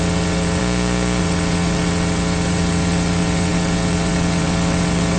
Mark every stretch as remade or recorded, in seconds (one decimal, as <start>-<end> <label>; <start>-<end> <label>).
0.0-0.6 remade; 0.6-1.2 recorded; 1.2-5.2 remade